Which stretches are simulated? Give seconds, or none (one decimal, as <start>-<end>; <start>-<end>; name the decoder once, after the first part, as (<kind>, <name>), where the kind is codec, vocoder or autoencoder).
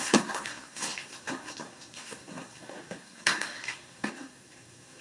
0.0-5.0 (codec, SNAC)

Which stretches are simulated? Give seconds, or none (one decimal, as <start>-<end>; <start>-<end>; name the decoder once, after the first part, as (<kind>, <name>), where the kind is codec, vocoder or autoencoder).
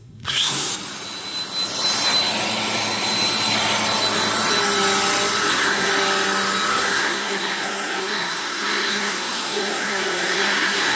0.0-0.7 (codec, SNAC); 5.5-5.9; 6.7-11.0